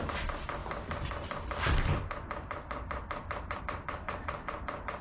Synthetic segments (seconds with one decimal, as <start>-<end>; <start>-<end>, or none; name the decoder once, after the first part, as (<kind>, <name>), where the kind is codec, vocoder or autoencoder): none